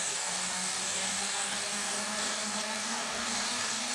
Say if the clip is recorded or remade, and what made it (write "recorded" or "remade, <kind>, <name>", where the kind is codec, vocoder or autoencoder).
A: remade, codec, DAC